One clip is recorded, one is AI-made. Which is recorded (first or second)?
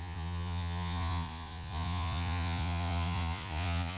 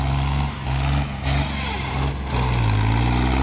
second